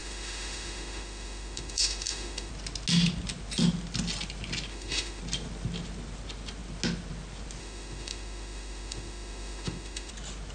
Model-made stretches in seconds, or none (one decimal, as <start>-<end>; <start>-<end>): 0.0-2.5; 4.7-5.2; 7.6-10.1